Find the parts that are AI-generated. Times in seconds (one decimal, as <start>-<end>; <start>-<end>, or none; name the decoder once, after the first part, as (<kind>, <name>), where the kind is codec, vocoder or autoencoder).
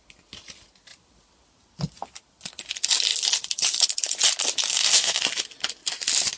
4.7-5.2 (codec, DAC)